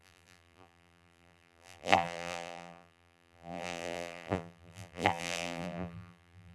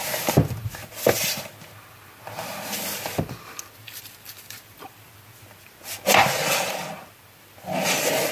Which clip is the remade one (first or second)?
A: first